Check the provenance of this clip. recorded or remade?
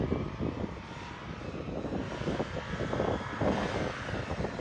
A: recorded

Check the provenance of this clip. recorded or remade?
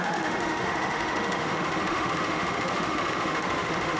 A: remade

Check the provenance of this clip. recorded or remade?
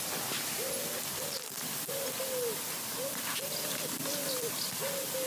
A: recorded